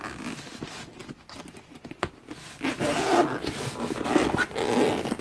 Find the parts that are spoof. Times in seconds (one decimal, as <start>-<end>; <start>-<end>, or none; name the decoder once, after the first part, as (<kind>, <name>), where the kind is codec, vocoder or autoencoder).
none